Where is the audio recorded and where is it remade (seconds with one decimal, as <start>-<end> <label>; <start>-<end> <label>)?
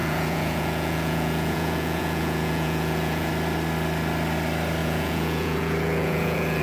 0.0-3.3 remade; 3.3-4.8 recorded; 4.8-6.6 remade